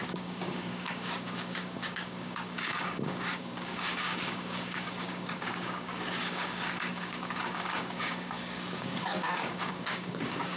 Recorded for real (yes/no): no